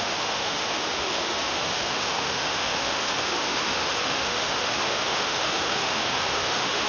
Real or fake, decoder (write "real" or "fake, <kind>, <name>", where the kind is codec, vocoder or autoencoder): fake, autoencoder, DAC-VAE